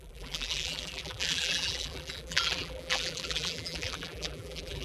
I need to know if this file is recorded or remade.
remade